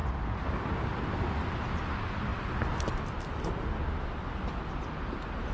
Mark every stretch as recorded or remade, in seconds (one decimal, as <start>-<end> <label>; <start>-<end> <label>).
0.0-5.5 recorded

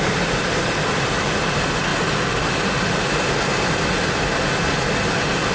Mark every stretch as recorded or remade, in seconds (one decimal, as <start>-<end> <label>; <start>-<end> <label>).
0.0-5.5 recorded

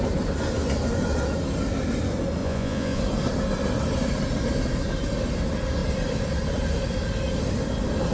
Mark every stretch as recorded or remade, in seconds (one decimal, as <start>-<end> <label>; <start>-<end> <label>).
0.0-2.4 recorded; 2.4-3.0 remade; 3.0-8.1 recorded

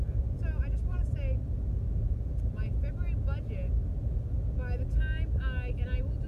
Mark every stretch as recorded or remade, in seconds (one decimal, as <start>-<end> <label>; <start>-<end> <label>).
0.0-6.3 recorded

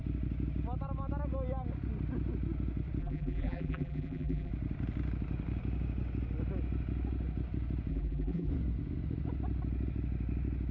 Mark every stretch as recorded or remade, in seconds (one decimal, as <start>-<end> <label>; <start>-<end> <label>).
0.0-3.0 recorded; 3.0-4.5 remade; 4.5-7.9 recorded; 7.9-8.5 remade; 8.5-10.7 recorded

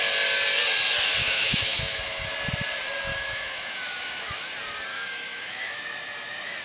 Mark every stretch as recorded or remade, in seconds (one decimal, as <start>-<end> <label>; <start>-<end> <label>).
0.0-1.2 recorded; 1.2-2.3 remade; 2.3-3.1 recorded; 3.1-4.5 remade; 4.5-4.9 recorded; 4.9-5.8 remade; 5.8-6.6 recorded